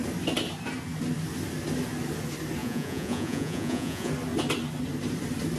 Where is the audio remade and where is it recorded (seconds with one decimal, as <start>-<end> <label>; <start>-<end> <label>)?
0.0-2.6 recorded; 2.6-4.1 remade; 4.1-5.6 recorded